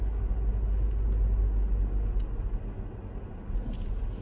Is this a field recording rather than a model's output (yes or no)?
yes